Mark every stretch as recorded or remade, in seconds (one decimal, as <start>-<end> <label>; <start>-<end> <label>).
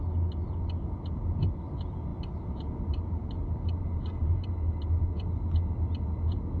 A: 0.0-6.6 recorded